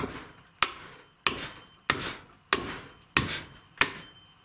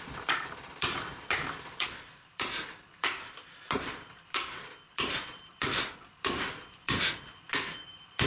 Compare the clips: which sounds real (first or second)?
first